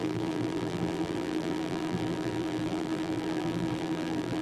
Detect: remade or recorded remade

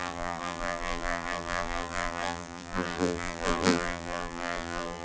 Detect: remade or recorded remade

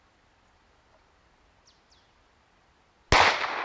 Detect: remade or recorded recorded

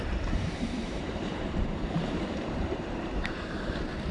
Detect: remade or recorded remade